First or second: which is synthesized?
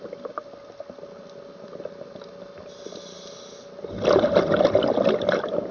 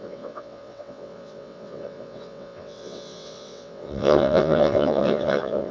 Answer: second